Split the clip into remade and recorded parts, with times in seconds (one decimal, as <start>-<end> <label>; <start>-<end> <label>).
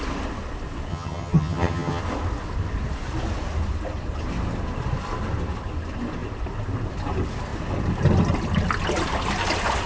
0.0-0.9 recorded; 0.9-2.0 remade; 2.0-9.9 recorded